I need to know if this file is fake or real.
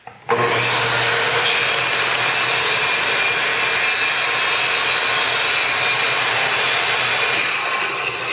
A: real